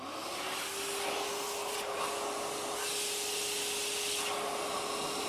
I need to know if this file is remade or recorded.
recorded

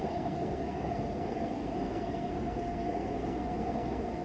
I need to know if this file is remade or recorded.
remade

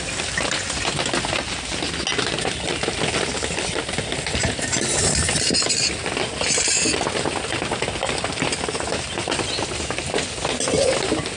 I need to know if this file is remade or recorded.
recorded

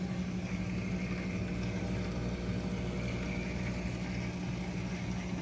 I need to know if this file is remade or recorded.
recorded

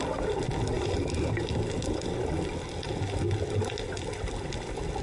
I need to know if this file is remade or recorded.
recorded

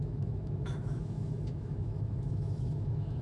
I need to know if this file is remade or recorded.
remade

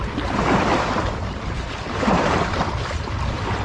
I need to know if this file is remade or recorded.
remade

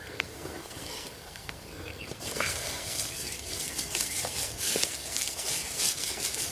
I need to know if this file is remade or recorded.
remade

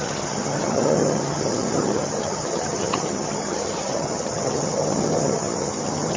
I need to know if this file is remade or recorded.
remade